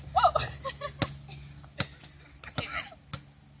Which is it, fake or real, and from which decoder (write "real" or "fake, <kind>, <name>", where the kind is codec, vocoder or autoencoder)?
real